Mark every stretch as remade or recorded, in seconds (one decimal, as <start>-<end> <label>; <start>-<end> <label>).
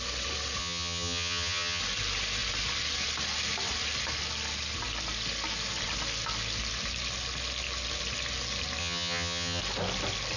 0.0-0.6 recorded; 0.6-1.8 remade; 1.8-8.8 recorded; 8.8-9.6 remade; 9.6-10.4 recorded